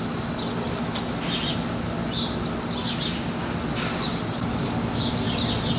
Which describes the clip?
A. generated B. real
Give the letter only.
B